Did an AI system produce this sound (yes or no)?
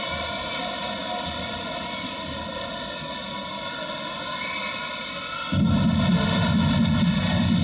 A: no